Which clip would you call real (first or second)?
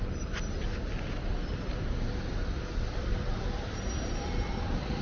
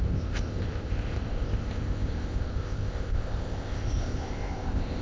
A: first